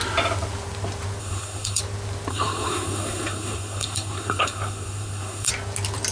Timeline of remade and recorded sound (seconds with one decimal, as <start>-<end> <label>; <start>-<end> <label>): 0.0-1.2 recorded; 1.2-1.8 remade; 1.8-2.3 recorded; 2.3-5.5 remade; 5.5-6.1 recorded